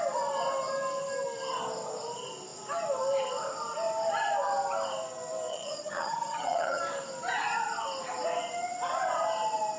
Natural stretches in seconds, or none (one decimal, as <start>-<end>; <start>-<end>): 0.0-5.5; 6.8-9.8